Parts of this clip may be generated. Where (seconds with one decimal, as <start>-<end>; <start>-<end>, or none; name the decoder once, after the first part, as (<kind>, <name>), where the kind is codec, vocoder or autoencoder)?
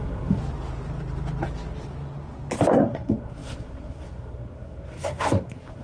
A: 0.0-0.4 (codec, SNAC); 2.7-5.8